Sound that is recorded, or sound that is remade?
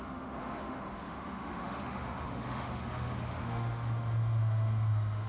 remade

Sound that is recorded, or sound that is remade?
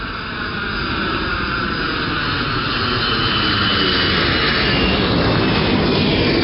recorded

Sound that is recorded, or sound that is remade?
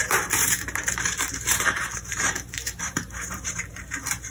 remade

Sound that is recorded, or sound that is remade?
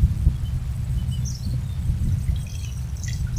recorded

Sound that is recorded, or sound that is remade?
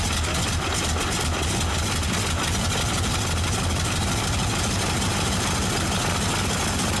recorded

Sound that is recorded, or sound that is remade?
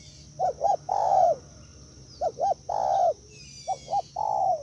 recorded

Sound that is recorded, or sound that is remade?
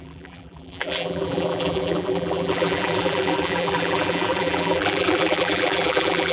remade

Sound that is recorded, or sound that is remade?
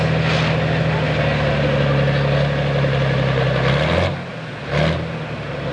recorded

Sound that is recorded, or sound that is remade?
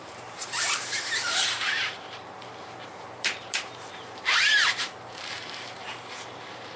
remade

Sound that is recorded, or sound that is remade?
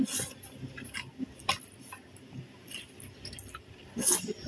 recorded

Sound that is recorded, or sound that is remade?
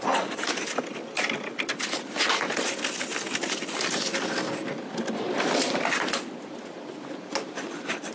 recorded